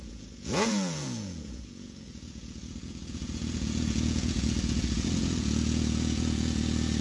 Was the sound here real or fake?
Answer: fake